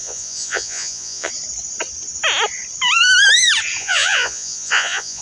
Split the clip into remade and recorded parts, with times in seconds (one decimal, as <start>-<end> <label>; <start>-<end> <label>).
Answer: 0.0-1.3 remade; 1.3-3.8 recorded; 3.8-5.2 remade